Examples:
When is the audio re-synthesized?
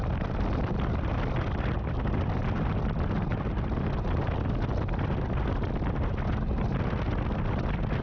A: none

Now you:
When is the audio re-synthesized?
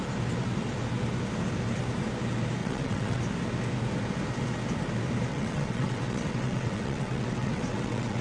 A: 2.6-3.2 (vocoder, WaveNeXt); 5.3-8.2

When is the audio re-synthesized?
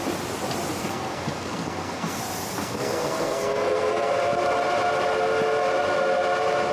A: 0.8-2.2 (codec, SNAC); 2.6-4.1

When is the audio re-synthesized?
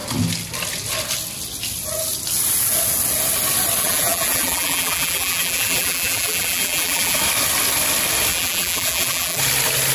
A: 3.8-7.2 (vocoder, BigVGAN v2); 8.3-9.4